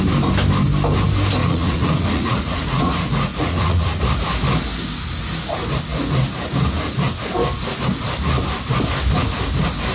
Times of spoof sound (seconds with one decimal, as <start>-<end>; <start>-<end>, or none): 1.4-4.0